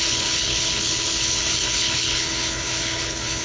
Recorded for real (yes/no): no